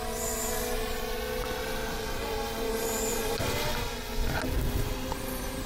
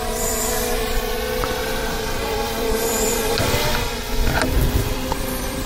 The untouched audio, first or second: first